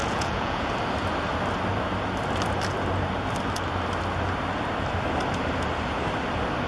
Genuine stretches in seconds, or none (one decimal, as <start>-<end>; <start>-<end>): 0.7-6.7